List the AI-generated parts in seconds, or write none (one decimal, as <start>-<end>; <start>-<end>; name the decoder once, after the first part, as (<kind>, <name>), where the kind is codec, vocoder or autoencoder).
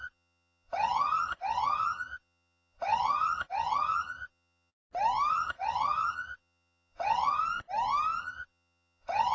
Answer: 0.0-4.7 (vocoder, HiFi-GAN); 5.3-7.4; 8.2-9.3